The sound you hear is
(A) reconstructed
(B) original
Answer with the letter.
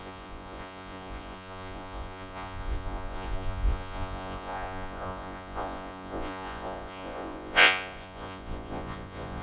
A